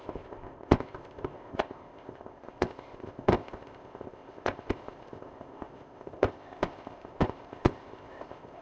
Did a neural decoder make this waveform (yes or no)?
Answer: yes